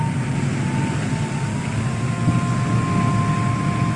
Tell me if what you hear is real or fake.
real